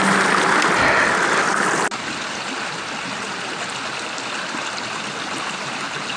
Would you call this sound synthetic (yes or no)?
no